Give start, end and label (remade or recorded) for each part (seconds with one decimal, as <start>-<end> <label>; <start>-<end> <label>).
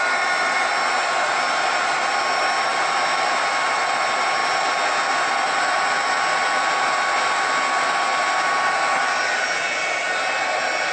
0.0-2.7 recorded; 2.7-3.3 remade; 3.3-10.9 recorded